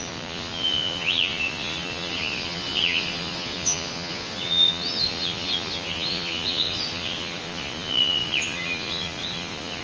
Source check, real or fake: fake